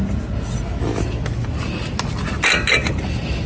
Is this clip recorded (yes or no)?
yes